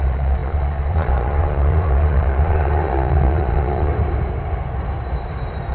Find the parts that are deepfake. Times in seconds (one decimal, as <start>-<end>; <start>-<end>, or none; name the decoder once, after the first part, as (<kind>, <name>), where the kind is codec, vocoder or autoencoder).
0.0-3.9 (vocoder, Vocos)